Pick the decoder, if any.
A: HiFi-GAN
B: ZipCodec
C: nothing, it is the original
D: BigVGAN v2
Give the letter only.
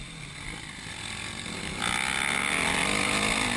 C